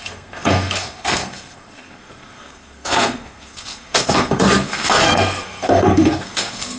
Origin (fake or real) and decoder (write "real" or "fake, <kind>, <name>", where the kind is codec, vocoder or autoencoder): fake, codec, SNAC